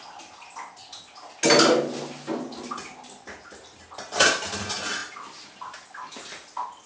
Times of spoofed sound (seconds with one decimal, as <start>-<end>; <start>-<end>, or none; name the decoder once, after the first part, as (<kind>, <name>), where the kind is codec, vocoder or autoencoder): none